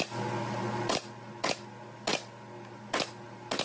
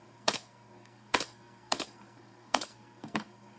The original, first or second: first